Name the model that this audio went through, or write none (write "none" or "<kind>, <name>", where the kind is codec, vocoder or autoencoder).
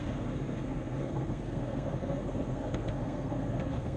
codec, SNAC